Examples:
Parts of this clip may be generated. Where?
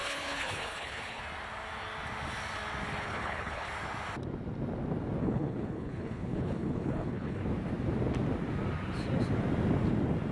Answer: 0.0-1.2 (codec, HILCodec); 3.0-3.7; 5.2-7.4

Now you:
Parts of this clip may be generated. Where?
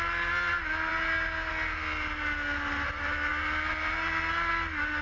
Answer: none